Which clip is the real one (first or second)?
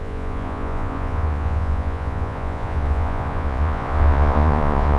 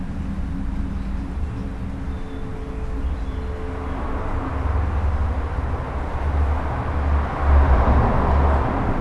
second